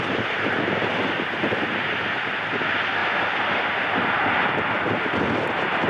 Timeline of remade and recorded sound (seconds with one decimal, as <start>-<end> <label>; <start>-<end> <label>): 0.0-5.9 recorded